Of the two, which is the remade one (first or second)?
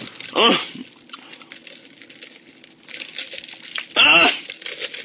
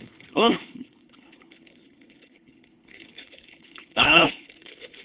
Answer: second